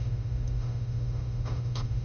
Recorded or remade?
remade